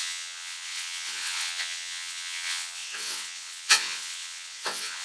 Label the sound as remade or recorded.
remade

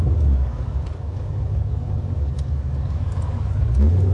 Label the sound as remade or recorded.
remade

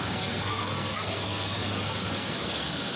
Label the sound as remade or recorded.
remade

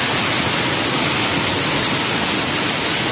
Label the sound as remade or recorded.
recorded